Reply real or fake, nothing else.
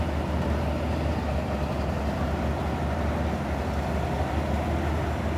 real